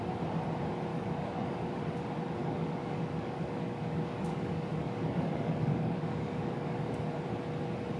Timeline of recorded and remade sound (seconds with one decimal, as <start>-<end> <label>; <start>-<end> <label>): 0.0-0.9 recorded; 0.9-1.8 remade; 1.8-2.4 recorded; 2.4-7.1 remade; 7.1-8.0 recorded